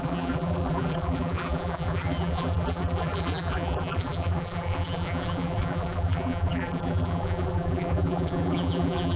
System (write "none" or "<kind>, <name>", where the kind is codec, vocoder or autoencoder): vocoder, BigVGAN v2